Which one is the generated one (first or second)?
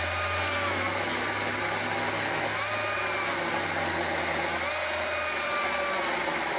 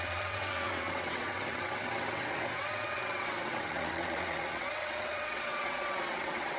second